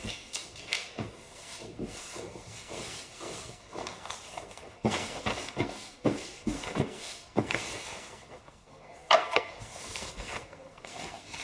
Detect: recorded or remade remade